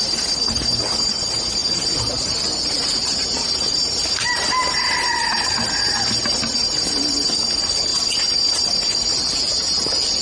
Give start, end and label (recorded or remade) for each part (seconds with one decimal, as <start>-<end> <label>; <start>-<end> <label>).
0.0-10.2 recorded